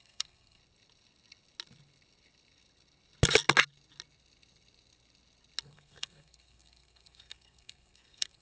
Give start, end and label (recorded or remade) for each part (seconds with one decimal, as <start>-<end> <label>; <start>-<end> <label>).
0.0-0.6 remade; 0.6-5.6 recorded; 5.6-8.4 remade